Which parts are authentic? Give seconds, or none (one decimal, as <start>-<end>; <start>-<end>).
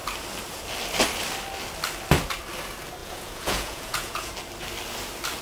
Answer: 0.0-3.0; 4.3-5.4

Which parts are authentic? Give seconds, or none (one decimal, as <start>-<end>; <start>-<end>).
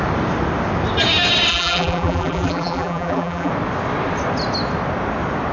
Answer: 0.0-1.5; 3.5-5.5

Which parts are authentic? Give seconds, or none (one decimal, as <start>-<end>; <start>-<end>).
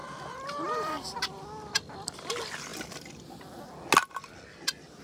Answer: 2.3-2.7; 3.3-5.0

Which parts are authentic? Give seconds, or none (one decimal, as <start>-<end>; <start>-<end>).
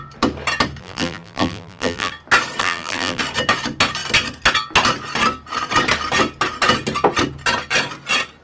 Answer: 0.0-0.8; 2.1-2.6; 3.2-8.4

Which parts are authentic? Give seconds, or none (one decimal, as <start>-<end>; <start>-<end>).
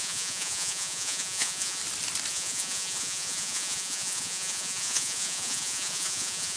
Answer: 1.8-2.3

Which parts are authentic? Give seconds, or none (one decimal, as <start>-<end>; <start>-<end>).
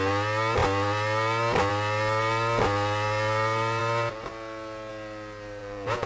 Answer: 0.0-5.6